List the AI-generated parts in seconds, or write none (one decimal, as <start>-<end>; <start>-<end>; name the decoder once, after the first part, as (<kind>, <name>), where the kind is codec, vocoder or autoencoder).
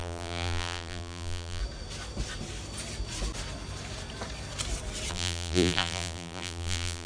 0.0-1.6 (vocoder, BigVGAN v2); 5.1-7.1